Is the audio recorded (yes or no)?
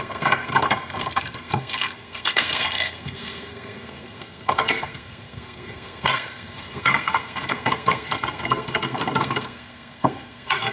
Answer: no